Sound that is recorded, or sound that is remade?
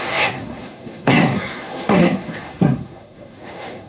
remade